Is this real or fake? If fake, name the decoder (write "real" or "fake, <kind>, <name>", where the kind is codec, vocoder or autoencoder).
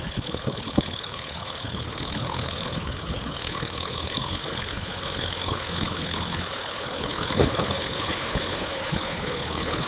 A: fake, codec, HILCodec